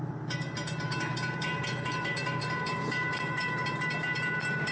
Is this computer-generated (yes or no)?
yes